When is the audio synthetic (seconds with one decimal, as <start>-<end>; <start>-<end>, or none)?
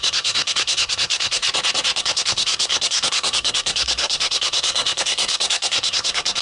0.0-1.4; 2.0-6.4